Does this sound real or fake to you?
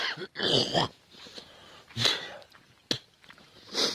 real